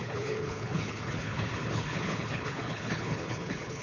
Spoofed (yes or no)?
yes